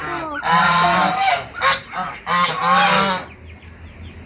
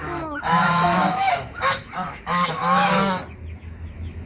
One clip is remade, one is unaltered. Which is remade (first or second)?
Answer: second